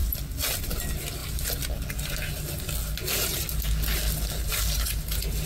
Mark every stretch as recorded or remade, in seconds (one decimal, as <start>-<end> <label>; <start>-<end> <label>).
0.0-5.5 recorded